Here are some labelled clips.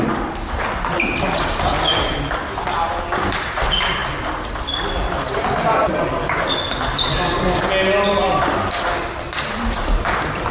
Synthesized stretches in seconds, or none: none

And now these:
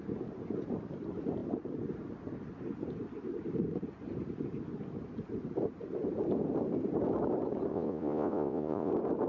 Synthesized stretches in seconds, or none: 7.7-8.9 (vocoder, Vocos)